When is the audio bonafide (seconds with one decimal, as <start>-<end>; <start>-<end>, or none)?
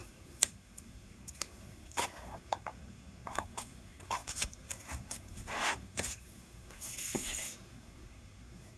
none